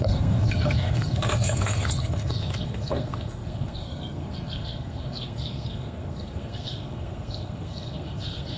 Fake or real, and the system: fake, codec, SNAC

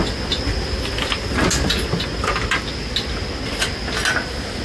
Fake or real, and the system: real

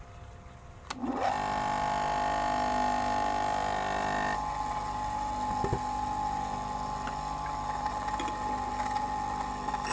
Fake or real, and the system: real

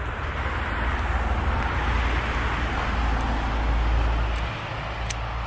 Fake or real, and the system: real